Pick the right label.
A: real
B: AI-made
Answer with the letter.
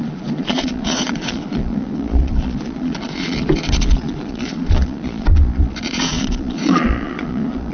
B